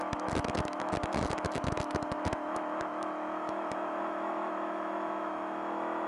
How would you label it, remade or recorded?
remade